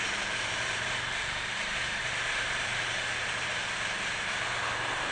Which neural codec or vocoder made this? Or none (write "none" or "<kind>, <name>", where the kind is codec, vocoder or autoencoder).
vocoder, BigVGAN v2